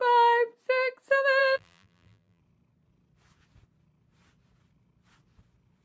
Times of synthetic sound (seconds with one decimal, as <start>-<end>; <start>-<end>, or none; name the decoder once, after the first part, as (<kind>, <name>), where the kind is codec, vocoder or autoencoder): 1.4-2.4 (vocoder, BigVGAN v2)